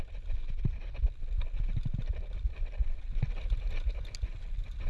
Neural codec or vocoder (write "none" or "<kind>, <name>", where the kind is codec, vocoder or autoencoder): none